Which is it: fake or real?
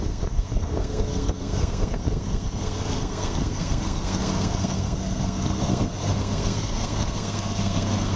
fake